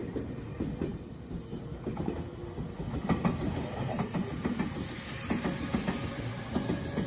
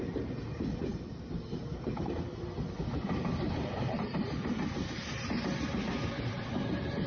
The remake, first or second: second